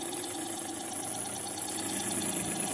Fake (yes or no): no